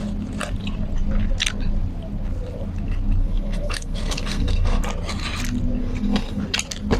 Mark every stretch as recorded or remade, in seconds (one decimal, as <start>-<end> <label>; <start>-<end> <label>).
0.0-3.2 recorded; 3.2-4.8 remade; 4.8-5.8 recorded; 5.8-6.4 remade; 6.4-7.0 recorded